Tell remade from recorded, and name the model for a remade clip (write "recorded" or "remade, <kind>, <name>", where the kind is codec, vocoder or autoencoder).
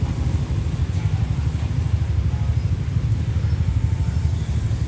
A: recorded